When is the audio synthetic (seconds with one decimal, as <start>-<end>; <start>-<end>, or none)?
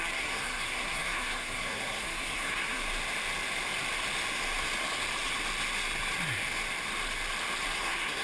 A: 0.0-2.8; 7.7-8.2